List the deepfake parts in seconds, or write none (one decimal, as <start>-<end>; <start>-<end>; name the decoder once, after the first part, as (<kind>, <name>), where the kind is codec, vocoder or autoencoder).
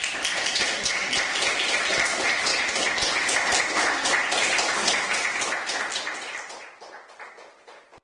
0.0-1.0 (vocoder, BigVGAN v2); 1.9-2.5; 3.5-4.8; 6.0-8.0